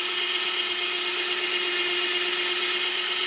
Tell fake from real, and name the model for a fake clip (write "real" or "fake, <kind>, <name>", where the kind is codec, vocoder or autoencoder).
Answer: real